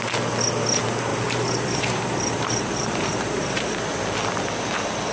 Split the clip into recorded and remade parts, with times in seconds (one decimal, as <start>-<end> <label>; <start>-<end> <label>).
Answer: 0.0-1.1 recorded; 1.1-3.8 remade; 3.8-5.1 recorded